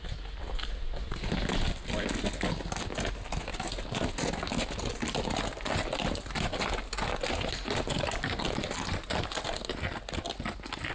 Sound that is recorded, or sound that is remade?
recorded